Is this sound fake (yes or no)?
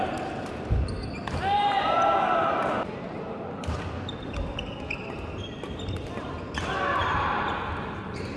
no